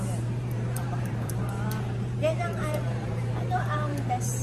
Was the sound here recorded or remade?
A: remade